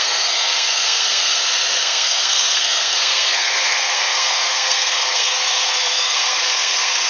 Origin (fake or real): fake